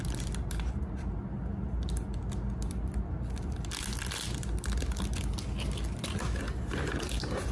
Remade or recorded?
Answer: recorded